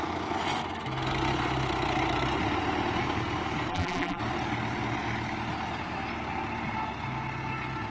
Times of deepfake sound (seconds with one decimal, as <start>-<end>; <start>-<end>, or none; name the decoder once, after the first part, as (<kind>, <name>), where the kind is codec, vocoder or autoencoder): 3.7-4.2 (vocoder, BigVGAN v2)